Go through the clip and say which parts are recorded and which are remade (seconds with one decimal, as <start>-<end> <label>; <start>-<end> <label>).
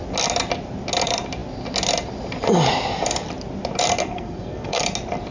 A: 0.0-4.0 recorded; 4.0-4.8 remade; 4.8-5.3 recorded